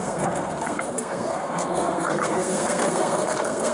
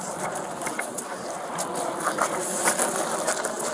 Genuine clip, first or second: second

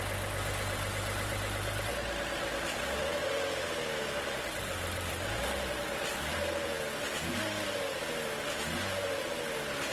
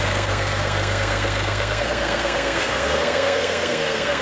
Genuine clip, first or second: first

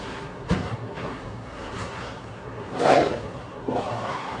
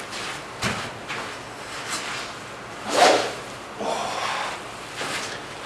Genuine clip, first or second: second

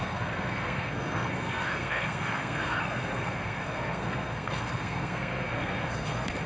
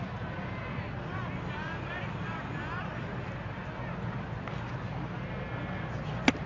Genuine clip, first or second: second